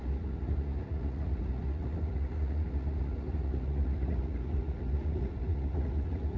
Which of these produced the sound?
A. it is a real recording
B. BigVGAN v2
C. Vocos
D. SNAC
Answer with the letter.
C